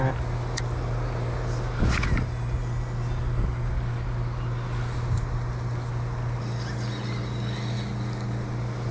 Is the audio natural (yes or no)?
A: yes